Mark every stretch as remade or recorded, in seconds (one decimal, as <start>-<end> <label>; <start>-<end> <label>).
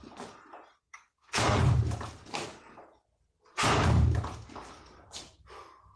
0.0-0.8 recorded; 0.8-1.6 remade; 1.6-6.0 recorded